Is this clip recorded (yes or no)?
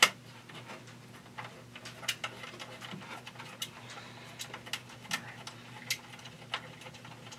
yes